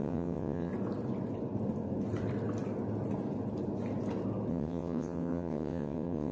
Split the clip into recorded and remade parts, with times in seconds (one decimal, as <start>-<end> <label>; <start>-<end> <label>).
0.0-0.7 remade; 0.7-4.5 recorded; 4.5-6.3 remade